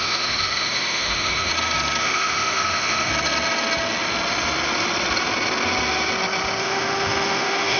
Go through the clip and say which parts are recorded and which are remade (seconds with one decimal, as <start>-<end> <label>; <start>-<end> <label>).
0.0-1.5 remade; 1.5-2.0 recorded; 2.0-3.1 remade; 3.1-6.6 recorded; 6.6-7.8 remade